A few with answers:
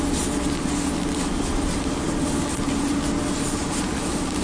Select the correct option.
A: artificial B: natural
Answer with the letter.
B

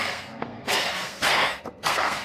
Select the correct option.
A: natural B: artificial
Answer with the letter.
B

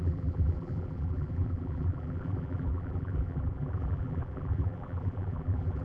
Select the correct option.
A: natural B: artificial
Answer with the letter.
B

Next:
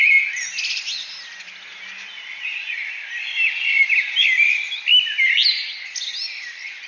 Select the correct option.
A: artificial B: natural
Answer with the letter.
B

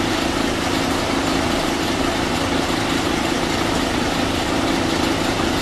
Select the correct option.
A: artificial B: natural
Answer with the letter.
B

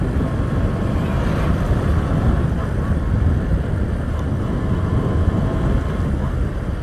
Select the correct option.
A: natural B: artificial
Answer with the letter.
A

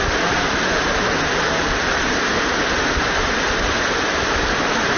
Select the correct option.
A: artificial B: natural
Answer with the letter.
B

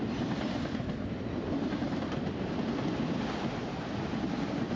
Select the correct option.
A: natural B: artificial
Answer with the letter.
A